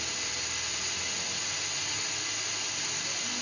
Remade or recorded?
recorded